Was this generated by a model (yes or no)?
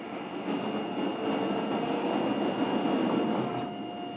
no